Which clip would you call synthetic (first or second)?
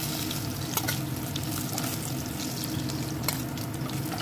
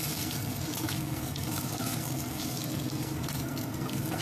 second